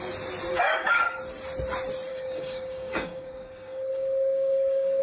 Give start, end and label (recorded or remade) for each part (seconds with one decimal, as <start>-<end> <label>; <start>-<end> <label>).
0.0-0.5 recorded; 0.5-1.2 remade; 1.2-2.1 recorded; 2.1-5.0 remade